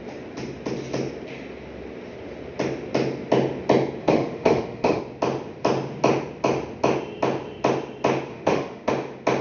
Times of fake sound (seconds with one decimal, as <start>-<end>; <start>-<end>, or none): 4.0-5.0; 8.3-8.9